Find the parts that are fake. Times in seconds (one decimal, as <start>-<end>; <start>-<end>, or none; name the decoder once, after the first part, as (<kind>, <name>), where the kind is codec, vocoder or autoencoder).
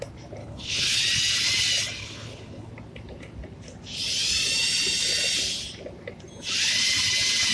0.4-1.0 (codec, HILCodec); 2.0-2.7